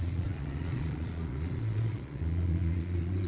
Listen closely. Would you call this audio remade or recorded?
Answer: remade